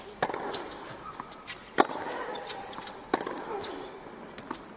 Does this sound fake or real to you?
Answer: real